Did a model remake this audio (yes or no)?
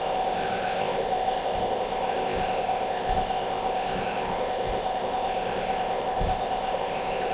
yes